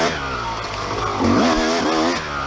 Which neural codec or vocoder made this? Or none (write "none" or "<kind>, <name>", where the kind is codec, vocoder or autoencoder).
none